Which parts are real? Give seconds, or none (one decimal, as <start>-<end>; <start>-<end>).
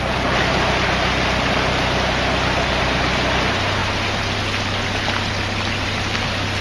0.0-6.6